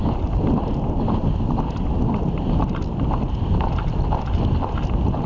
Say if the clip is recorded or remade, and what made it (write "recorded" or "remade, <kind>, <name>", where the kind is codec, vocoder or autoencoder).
recorded